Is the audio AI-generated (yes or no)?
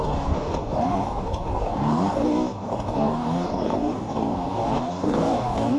yes